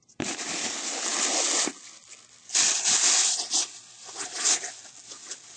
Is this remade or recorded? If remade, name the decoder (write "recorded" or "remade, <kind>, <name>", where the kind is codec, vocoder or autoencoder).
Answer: recorded